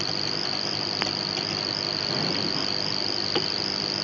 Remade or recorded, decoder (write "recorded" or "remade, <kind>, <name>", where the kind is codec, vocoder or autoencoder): recorded